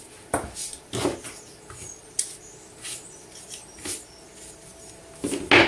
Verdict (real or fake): real